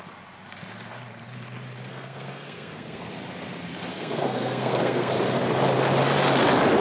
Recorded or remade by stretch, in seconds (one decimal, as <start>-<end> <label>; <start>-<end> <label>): 0.0-1.9 recorded; 1.9-3.1 remade; 3.1-3.9 recorded; 3.9-5.1 remade; 5.1-6.8 recorded